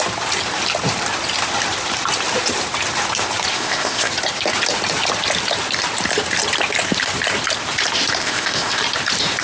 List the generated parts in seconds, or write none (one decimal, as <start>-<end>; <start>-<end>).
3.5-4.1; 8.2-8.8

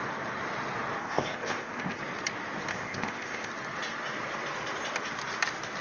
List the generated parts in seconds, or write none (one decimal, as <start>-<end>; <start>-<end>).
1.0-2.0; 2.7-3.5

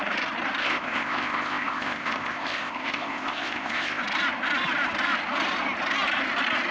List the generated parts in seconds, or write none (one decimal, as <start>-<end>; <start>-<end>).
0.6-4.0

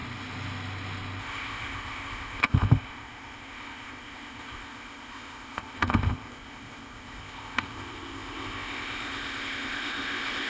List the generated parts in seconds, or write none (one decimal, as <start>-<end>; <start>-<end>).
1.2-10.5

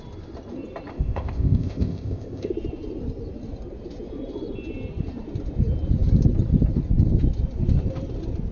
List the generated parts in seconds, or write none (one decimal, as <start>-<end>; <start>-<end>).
0.9-2.5